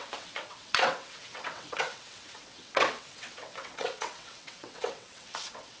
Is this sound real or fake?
fake